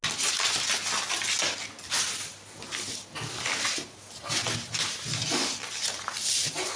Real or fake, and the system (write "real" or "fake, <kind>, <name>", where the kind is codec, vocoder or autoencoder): real